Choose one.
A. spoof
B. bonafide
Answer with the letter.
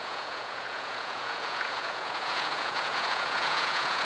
A